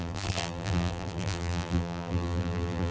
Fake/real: fake